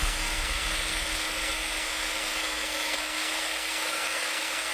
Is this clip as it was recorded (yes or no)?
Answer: no